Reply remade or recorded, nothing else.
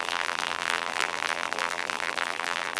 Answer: remade